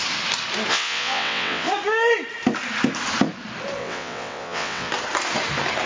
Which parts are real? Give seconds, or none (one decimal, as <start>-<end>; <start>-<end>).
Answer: 0.0-0.7; 1.7-3.8; 4.9-5.9